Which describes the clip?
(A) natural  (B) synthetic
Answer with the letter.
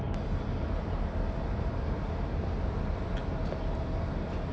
A